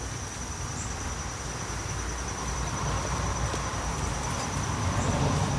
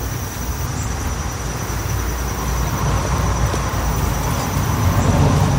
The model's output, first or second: first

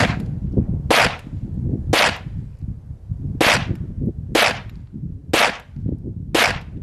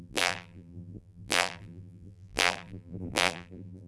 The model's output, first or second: second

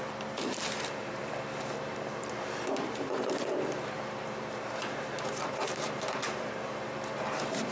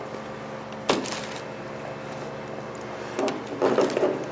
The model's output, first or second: first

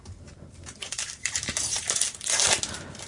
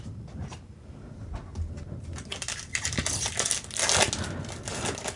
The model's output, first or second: first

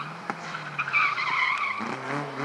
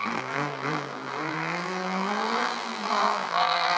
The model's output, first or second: second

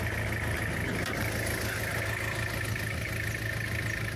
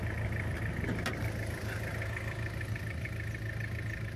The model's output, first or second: second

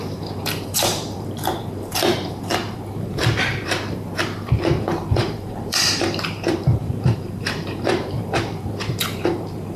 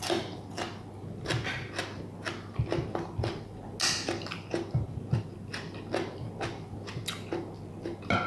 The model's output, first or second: first